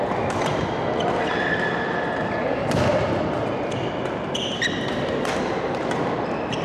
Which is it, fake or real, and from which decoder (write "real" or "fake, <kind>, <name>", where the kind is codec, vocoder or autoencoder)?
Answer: real